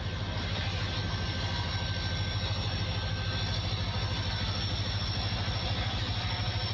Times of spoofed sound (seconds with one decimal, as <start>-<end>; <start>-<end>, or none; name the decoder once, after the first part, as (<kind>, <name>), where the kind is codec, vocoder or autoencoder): none